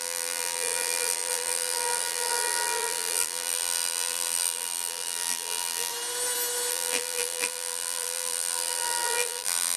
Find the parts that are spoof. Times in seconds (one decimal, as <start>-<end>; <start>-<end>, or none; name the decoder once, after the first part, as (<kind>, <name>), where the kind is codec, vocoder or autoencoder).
0.0-5.9 (vocoder, BigVGAN v2); 6.7-9.8